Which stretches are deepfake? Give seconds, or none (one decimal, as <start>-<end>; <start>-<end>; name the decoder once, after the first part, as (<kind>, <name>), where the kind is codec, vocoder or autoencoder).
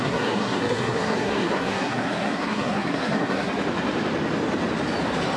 0.0-3.5 (codec, SNAC)